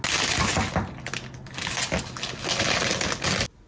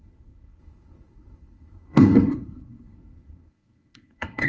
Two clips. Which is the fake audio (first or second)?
second